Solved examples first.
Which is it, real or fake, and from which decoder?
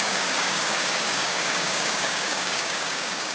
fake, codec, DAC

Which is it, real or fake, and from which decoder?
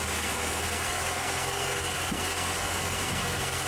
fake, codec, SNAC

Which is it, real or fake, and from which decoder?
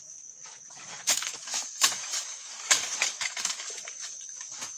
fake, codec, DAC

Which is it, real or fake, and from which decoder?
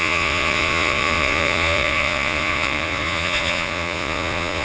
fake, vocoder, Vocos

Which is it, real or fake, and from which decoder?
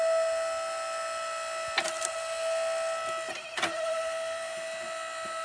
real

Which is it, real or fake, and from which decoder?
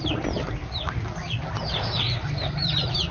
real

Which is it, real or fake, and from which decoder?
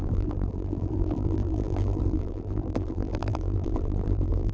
fake, vocoder, BigVGAN v2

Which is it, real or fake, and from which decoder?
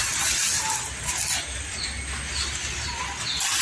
real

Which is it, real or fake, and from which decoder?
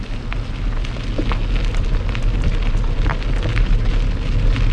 real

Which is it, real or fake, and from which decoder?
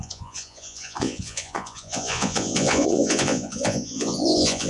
fake, vocoder, Vocos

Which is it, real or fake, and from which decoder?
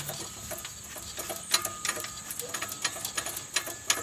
real